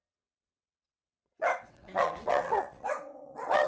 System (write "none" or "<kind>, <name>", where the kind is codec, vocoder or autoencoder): vocoder, WaveNeXt